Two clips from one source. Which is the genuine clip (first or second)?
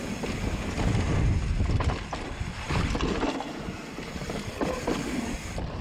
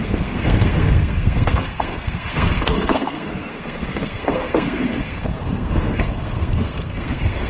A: first